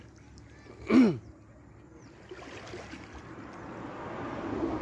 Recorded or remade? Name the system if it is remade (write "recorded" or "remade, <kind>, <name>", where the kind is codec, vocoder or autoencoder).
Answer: recorded